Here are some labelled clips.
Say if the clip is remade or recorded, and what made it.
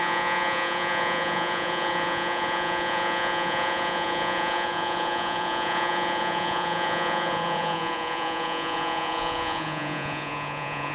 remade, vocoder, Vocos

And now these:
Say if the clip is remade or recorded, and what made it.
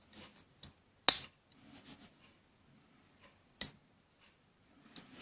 recorded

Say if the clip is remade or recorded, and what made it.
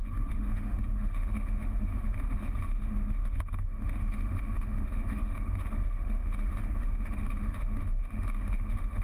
remade, autoencoder, DAC-VAE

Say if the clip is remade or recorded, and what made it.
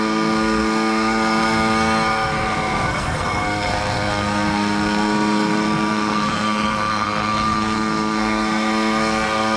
remade, codec, SNAC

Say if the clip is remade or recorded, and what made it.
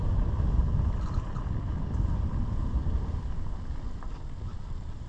recorded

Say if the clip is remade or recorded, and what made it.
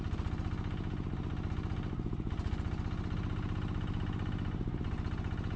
recorded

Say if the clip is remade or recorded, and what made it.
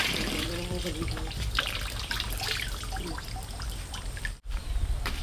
remade, vocoder, BigVGAN v2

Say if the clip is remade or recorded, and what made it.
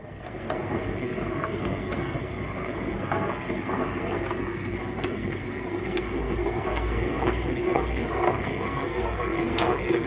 remade, codec, SNAC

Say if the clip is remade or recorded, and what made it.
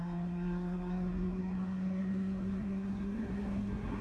remade, codec, SNAC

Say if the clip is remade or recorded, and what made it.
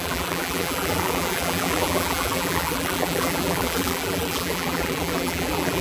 remade, vocoder, BigVGAN v2